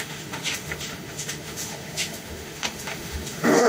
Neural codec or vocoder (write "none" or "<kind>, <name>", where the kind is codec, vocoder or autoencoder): autoencoder, DAC-VAE